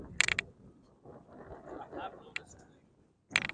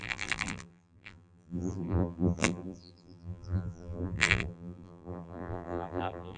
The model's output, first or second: second